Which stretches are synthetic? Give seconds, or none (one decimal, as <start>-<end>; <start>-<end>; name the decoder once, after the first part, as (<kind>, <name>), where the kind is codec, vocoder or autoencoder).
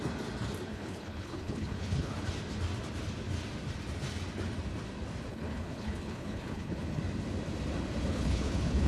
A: 0.7-2.1 (codec, HILCodec); 5.3-7.0; 8.1-8.9